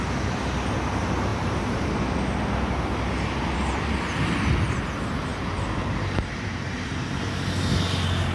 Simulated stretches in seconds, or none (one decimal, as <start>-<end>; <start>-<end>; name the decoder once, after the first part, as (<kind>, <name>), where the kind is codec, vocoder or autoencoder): 1.3-1.9 (vocoder, BigVGAN v2); 5.3-7.3